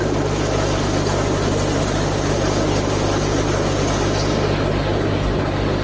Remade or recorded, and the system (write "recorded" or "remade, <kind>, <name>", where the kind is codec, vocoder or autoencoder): recorded